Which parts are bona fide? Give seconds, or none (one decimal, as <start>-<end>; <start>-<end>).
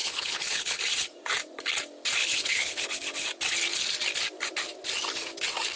0.8-2.2; 2.8-5.8